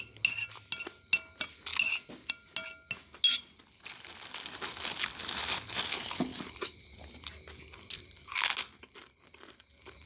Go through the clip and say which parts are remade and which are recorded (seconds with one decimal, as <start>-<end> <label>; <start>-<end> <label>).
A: 0.0-10.1 recorded